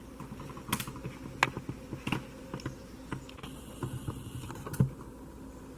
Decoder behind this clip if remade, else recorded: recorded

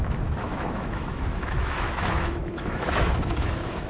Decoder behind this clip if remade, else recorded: remade, autoencoder, DAC-VAE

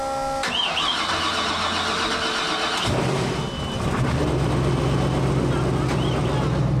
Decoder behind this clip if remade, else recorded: recorded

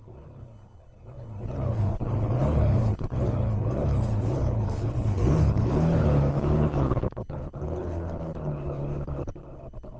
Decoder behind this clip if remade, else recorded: remade, codec, HILCodec